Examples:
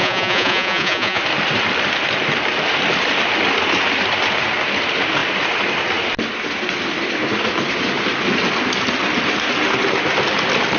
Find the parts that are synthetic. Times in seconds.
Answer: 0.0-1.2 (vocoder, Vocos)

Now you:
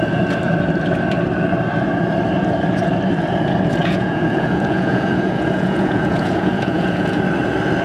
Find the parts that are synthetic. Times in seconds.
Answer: 3.8-7.2 (vocoder, Vocos)

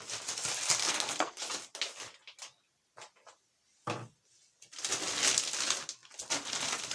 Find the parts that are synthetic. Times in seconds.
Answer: 0.8-1.4 (codec, SNAC)

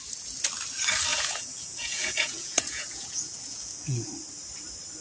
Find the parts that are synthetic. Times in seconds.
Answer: 1.1-4.1 (vocoder, Vocos)

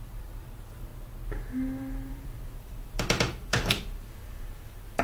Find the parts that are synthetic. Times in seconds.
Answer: 0.0-0.9 (vocoder, BigVGAN v2); 2.1-5.0

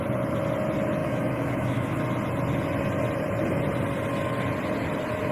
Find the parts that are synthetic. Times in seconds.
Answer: 1.0-2.0 (autoencoder, DAC-VAE)